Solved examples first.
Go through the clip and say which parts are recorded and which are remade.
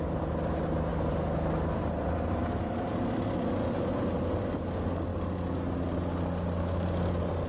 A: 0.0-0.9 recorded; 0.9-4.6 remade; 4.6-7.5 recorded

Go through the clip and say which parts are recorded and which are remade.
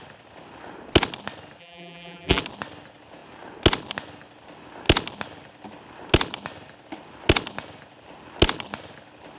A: 0.0-1.6 recorded; 1.6-2.4 remade; 2.4-9.4 recorded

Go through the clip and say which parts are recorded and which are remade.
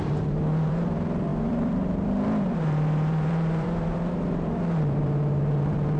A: 0.0-6.0 remade